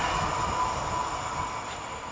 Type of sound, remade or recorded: recorded